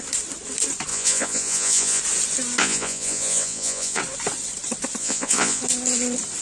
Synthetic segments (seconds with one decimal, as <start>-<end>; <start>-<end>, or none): 0.9-2.0; 2.6-4.0; 5.0-5.6